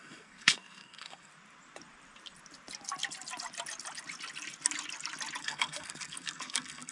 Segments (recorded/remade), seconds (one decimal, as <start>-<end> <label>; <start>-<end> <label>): 0.0-1.3 remade; 1.3-5.4 recorded; 5.4-6.9 remade